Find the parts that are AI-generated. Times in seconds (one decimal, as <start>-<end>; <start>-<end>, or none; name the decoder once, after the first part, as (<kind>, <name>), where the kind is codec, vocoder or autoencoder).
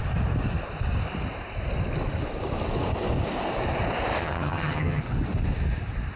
4.2-5.0 (vocoder, HiFi-GAN)